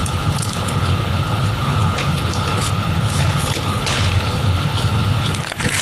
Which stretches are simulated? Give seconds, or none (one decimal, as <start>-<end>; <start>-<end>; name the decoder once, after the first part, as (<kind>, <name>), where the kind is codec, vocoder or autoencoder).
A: 0.0-5.8 (codec, HILCodec)

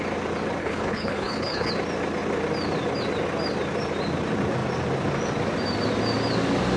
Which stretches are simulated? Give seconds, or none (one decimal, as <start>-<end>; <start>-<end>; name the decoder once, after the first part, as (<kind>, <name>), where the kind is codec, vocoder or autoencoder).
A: 0.6-1.7 (codec, HILCodec)